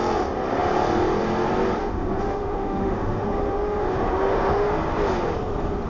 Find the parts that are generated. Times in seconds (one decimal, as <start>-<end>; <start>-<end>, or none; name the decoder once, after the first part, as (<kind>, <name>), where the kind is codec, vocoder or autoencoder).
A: 1.8-4.7 (autoencoder, DAC-VAE)